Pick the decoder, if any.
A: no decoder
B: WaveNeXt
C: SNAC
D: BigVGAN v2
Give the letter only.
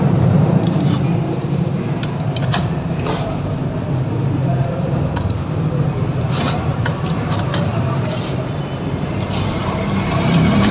D